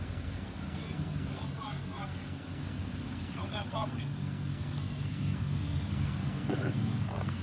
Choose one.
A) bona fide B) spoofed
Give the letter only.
B